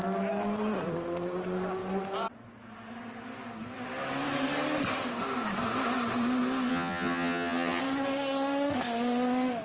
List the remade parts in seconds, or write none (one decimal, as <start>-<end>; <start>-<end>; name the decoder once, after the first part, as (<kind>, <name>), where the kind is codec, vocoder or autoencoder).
6.7-7.8 (vocoder, HiFi-GAN)